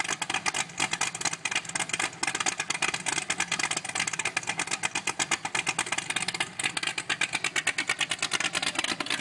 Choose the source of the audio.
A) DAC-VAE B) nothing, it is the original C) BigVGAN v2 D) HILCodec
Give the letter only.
B